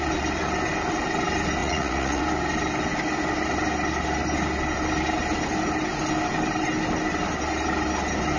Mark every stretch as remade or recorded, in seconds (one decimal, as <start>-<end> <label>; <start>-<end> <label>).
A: 0.0-1.6 recorded; 1.6-2.2 remade; 2.2-8.4 recorded